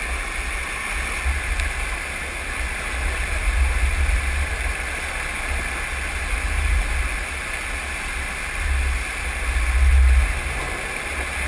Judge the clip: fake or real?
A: real